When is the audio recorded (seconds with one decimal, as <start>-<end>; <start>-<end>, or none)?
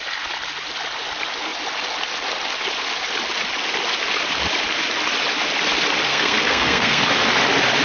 0.0-6.1; 7.0-7.8